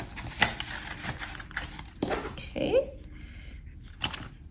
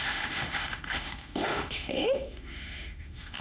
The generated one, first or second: second